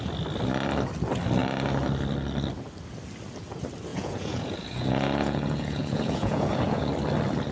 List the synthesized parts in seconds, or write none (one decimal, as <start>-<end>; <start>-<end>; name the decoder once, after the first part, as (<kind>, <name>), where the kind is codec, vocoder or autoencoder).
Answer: 3.9-6.9 (vocoder, Vocos)